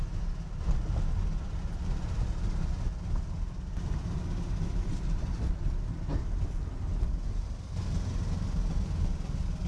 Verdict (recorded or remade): recorded